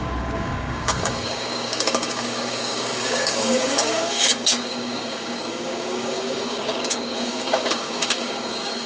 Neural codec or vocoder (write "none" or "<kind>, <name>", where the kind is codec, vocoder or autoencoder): codec, DAC